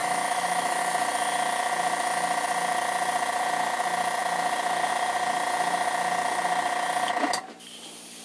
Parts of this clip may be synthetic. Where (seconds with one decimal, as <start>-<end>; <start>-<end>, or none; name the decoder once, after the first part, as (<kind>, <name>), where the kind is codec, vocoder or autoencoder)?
0.0-0.8 (autoencoder, DAC-VAE)